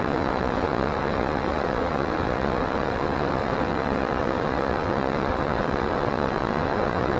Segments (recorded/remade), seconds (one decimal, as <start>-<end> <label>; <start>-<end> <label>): 0.0-7.2 remade